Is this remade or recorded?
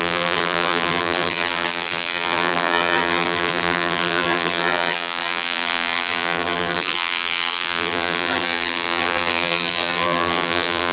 remade